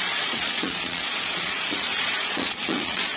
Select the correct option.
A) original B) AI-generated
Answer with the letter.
B